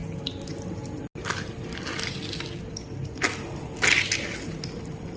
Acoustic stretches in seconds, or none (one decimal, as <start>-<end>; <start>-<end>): 0.0-5.2